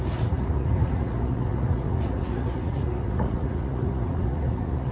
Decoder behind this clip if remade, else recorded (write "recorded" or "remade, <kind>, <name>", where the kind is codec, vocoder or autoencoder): remade, vocoder, Vocos